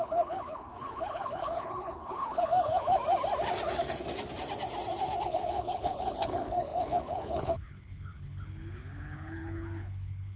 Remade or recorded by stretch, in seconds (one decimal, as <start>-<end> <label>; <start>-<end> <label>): 0.0-3.0 remade; 3.0-5.2 recorded; 5.2-10.4 remade